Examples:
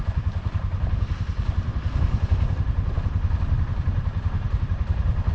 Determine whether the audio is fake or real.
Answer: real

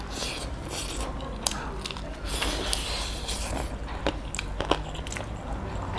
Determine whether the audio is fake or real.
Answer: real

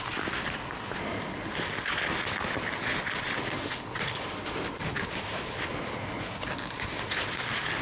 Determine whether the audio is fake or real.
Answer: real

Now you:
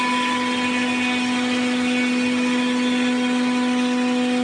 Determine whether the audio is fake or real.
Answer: real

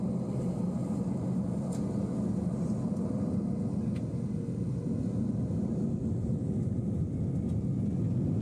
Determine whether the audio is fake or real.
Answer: real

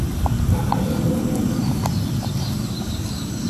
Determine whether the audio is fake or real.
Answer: real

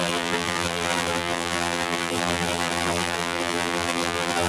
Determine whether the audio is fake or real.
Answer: fake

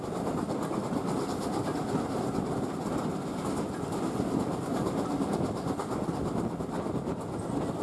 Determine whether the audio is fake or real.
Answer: real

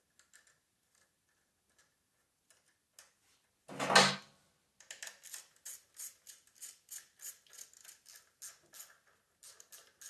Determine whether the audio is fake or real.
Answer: real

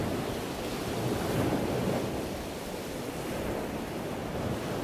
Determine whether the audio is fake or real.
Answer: real